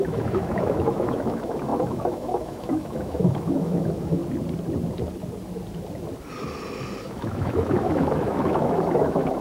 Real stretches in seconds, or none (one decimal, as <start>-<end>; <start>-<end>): 4.2-7.0